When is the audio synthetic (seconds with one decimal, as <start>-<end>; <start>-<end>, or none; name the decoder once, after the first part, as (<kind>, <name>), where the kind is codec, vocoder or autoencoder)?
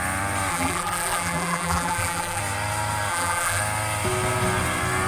0.5-2.4 (vocoder, BigVGAN v2); 3.1-3.6